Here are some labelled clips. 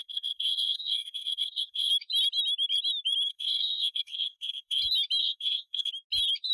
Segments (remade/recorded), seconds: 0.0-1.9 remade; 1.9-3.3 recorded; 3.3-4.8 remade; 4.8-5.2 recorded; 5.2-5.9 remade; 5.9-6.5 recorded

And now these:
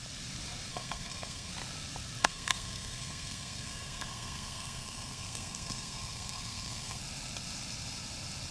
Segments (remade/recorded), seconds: 0.0-0.7 recorded; 0.7-1.5 remade; 1.5-2.2 recorded; 2.2-7.0 remade; 7.0-8.5 recorded

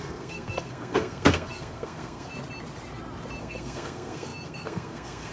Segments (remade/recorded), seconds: 0.0-2.3 remade; 2.3-3.4 recorded; 3.4-5.3 remade

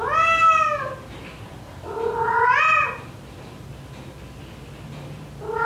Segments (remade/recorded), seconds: 0.0-5.7 recorded

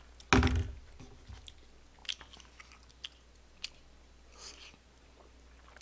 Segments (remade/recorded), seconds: 0.0-5.8 recorded

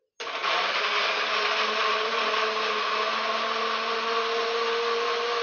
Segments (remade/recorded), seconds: 0.0-5.4 recorded

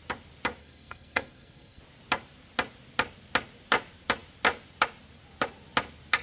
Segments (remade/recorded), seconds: 0.0-0.6 recorded; 0.6-1.8 remade; 1.8-6.2 recorded